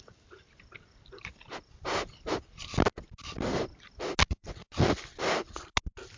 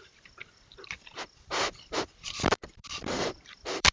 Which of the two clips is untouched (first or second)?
first